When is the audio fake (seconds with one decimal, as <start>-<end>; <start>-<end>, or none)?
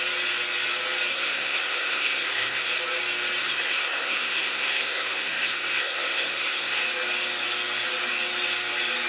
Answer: 1.1-2.7; 3.4-6.8